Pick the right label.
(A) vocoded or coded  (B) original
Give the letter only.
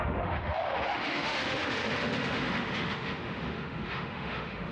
A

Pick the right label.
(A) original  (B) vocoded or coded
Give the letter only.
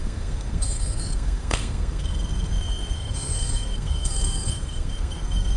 B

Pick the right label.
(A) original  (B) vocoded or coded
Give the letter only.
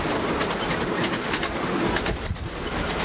A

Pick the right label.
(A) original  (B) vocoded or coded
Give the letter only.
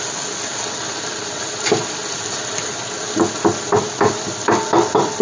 A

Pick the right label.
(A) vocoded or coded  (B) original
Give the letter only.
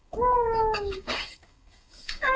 A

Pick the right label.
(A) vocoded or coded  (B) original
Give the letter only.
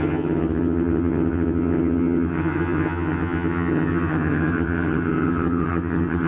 A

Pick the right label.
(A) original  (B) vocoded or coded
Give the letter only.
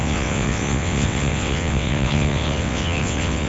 B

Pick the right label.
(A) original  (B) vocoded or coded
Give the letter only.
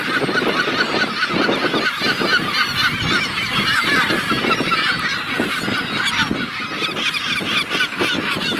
B